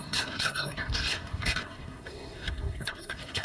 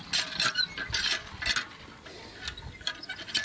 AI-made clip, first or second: first